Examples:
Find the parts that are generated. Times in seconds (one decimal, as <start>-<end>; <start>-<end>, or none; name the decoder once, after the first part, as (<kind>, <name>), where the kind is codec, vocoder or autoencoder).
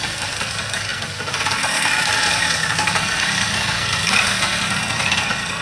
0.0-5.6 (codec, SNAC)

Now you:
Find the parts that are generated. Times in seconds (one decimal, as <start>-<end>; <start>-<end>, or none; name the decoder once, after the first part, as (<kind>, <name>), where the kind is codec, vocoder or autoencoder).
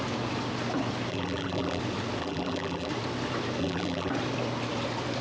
1.1-1.8 (vocoder, BigVGAN v2); 2.2-2.9; 3.6-4.1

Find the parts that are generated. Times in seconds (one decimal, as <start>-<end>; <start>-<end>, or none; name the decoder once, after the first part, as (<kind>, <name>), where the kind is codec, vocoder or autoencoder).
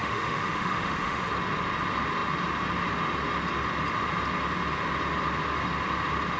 0.0-1.3 (autoencoder, DAC-VAE)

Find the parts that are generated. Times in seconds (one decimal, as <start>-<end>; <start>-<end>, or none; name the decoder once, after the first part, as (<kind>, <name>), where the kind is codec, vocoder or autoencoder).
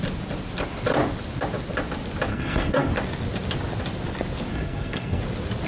2.3-2.9 (codec, SNAC); 4.5-5.2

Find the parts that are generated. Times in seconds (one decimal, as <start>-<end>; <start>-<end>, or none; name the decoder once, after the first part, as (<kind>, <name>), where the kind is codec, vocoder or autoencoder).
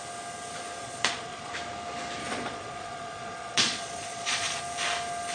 0.8-1.5 (vocoder, Vocos); 2.2-4.6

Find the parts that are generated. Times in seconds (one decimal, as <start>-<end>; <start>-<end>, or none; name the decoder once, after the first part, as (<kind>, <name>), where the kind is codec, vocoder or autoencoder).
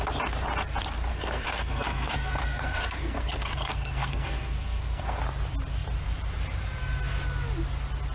1.1-5.2 (codec, SNAC)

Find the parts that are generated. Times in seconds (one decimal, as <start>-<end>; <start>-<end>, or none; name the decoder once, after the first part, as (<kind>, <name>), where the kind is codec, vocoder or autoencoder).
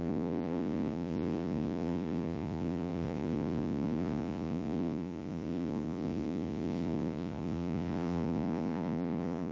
0.0-9.5 (vocoder, Vocos)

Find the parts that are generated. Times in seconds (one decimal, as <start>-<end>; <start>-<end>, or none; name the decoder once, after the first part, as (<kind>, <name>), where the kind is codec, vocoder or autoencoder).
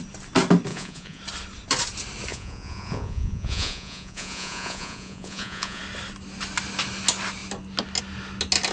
0.7-1.2 (vocoder, Vocos); 2.3-5.8